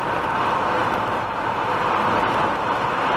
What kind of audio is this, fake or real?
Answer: fake